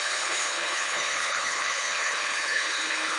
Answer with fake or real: fake